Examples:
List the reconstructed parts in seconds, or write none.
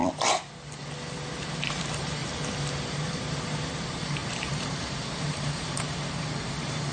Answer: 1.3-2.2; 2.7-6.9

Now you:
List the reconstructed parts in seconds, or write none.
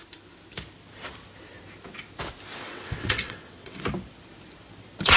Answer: 2.6-3.8